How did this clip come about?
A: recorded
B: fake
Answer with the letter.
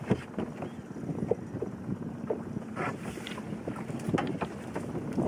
A